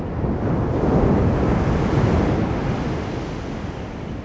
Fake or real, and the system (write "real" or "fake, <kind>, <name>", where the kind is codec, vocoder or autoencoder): real